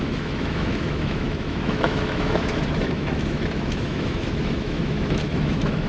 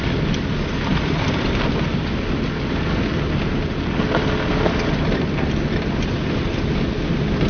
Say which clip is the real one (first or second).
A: second